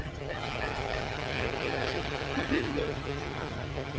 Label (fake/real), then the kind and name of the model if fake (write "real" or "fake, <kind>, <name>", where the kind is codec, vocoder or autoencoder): fake, vocoder, HiFi-GAN